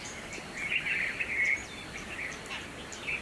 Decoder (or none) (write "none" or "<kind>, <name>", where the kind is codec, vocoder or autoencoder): none